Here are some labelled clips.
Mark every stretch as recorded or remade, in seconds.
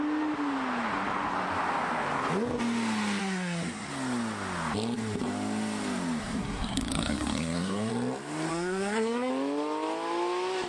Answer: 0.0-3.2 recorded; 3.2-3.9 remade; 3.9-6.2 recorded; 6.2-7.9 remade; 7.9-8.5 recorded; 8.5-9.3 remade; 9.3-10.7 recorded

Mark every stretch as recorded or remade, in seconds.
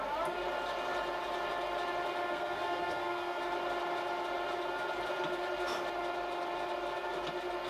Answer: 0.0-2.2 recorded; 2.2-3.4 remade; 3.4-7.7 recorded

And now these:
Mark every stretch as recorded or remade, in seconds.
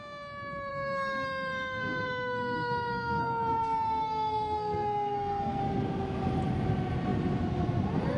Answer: 0.0-0.7 recorded; 0.7-5.6 remade; 5.6-8.2 recorded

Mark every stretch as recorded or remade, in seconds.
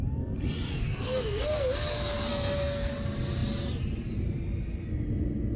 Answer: 0.0-0.7 recorded; 0.7-2.9 remade; 2.9-5.6 recorded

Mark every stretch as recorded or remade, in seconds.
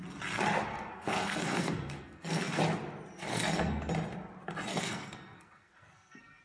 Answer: 0.0-0.7 recorded; 0.7-2.6 remade; 2.6-3.3 recorded; 3.3-3.9 remade; 3.9-4.7 recorded; 4.7-6.4 remade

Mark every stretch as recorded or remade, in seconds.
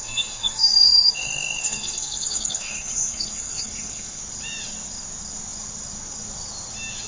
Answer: 0.0-4.2 remade; 4.2-7.1 recorded